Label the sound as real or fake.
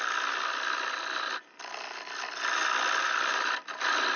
real